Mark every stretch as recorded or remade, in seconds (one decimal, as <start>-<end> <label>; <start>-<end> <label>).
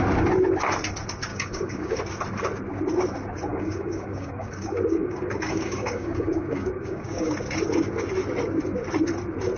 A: 0.0-1.3 recorded; 1.3-2.0 remade; 2.0-3.5 recorded; 3.5-7.3 remade; 7.3-9.6 recorded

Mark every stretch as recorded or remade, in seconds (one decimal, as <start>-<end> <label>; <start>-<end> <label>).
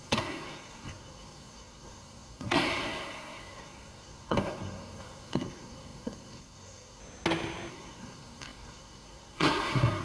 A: 0.0-7.0 remade; 7.0-7.7 recorded; 7.7-10.0 remade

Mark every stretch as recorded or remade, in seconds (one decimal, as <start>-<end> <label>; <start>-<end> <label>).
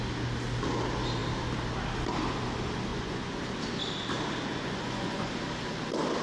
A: 0.0-2.9 recorded; 2.9-3.4 remade; 3.4-4.5 recorded; 4.5-5.3 remade; 5.3-6.2 recorded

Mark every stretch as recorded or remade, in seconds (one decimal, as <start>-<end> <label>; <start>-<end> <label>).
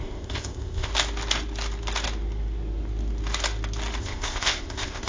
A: 0.0-0.9 remade; 0.9-4.0 recorded; 4.0-5.1 remade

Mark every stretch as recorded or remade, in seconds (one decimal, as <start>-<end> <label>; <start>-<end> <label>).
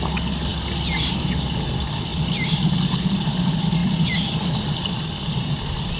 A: 0.0-6.0 recorded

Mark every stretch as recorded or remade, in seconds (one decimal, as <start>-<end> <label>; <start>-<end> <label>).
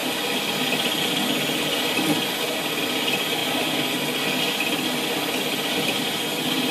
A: 0.0-6.7 recorded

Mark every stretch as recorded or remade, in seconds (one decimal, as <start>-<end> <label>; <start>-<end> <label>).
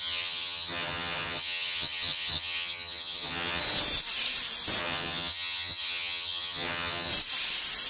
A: 0.0-3.6 remade; 3.6-4.8 recorded; 4.8-7.1 remade; 7.1-7.9 recorded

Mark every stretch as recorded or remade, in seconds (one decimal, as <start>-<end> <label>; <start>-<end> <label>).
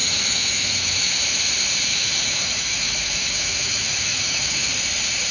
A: 0.0-1.1 remade; 1.1-1.9 recorded; 1.9-4.7 remade; 4.7-5.3 recorded